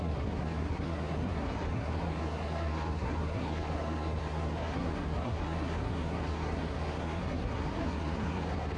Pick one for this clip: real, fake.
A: fake